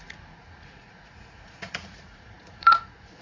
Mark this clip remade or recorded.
remade